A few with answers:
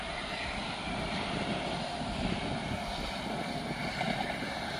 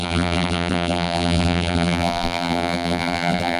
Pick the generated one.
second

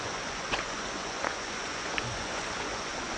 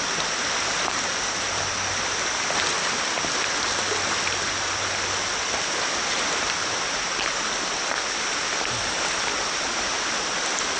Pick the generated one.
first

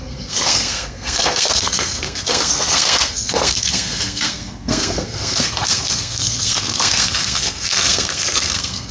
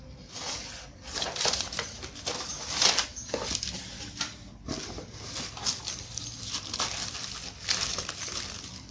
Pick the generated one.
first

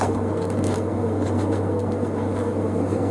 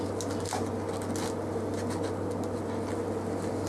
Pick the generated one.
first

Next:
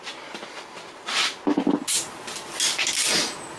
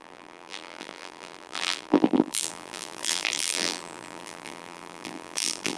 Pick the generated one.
second